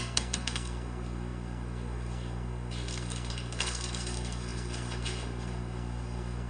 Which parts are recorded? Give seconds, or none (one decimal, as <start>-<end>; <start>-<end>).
none